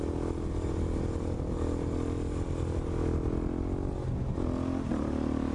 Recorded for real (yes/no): yes